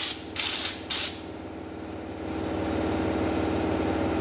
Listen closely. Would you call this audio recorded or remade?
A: recorded